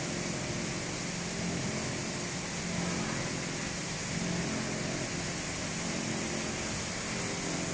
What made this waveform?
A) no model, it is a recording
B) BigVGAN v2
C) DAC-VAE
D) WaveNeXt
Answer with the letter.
A